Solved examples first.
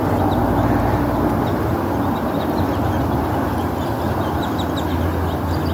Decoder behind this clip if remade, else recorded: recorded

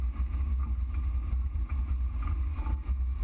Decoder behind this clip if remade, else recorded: recorded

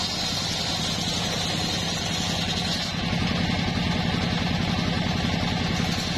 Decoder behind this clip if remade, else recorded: recorded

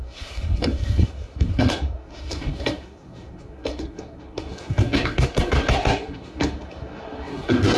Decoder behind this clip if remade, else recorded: remade, codec, SNAC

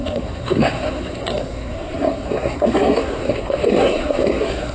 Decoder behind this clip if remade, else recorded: remade, codec, SNAC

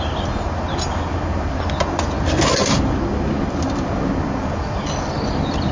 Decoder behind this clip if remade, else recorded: recorded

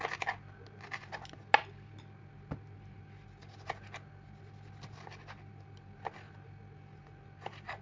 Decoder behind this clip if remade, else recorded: recorded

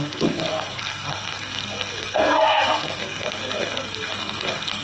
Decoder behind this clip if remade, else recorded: remade, codec, SNAC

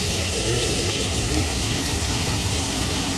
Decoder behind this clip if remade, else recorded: remade, codec, SNAC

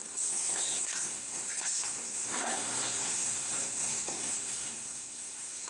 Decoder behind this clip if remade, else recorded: remade, codec, SNAC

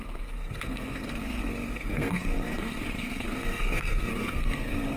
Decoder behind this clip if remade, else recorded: remade, codec, SNAC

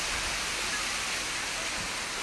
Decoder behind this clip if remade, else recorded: recorded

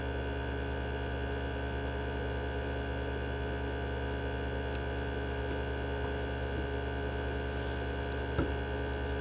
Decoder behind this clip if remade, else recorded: recorded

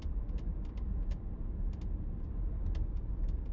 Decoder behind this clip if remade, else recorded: recorded